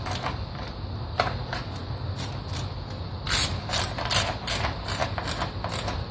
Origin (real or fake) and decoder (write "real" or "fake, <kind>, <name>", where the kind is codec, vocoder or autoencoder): real